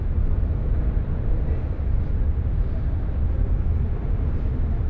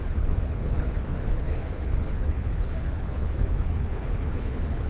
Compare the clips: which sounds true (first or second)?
first